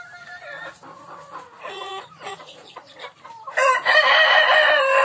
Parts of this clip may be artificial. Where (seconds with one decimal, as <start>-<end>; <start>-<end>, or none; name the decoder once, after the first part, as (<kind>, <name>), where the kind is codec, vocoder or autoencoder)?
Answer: 0.9-3.0 (vocoder, Vocos)